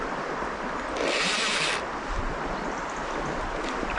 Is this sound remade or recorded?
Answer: recorded